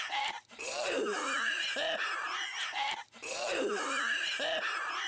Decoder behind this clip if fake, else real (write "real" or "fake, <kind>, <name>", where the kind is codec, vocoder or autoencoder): fake, vocoder, BigVGAN v2